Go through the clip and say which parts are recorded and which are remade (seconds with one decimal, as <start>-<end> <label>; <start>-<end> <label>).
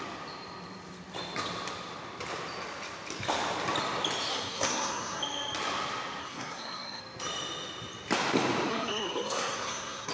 0.0-4.3 recorded; 4.3-5.2 remade; 5.2-6.2 recorded; 6.2-7.0 remade; 7.0-8.7 recorded; 8.7-10.1 remade